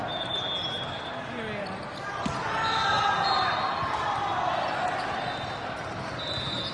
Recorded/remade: recorded